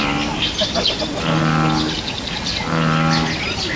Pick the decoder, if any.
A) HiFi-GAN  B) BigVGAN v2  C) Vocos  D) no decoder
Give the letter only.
D